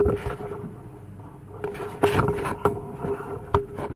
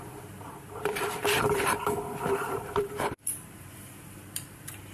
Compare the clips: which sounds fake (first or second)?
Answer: second